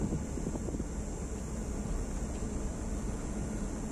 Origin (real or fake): real